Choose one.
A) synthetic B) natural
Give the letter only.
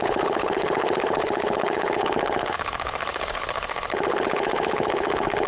A